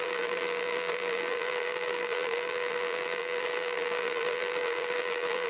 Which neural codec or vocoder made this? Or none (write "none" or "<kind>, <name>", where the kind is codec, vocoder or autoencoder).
vocoder, BigVGAN v2